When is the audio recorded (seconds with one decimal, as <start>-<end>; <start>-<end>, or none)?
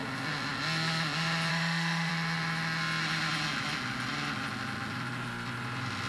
0.0-1.5; 2.1-6.1